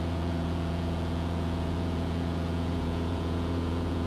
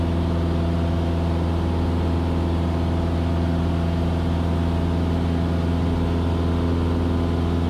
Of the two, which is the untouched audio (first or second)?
second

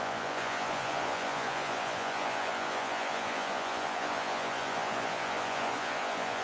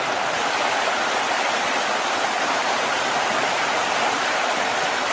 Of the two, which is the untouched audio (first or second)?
second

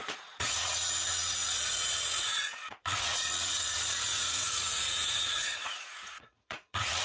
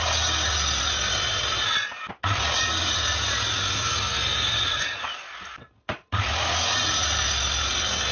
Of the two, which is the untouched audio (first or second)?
second